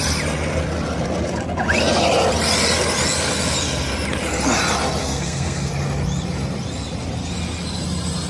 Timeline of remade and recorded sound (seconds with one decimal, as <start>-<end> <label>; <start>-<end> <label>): 0.0-5.0 recorded; 5.0-5.7 remade; 5.7-8.3 recorded